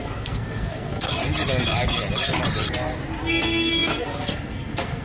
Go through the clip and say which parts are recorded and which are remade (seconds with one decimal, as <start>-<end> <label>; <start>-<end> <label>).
0.0-1.2 remade; 1.2-3.3 recorded; 3.3-5.0 remade